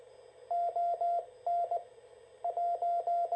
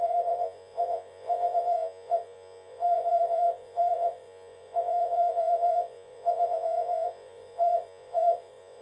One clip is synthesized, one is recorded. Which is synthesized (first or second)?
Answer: second